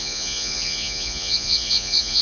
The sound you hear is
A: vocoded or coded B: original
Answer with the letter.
A